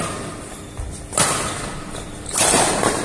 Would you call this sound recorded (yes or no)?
yes